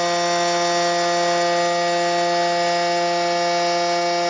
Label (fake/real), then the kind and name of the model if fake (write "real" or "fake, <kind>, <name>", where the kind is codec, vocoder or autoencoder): real